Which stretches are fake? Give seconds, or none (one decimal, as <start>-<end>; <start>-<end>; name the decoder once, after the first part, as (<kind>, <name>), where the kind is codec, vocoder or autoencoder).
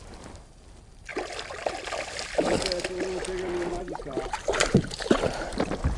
0.0-1.1 (vocoder, BigVGAN v2); 3.8-6.0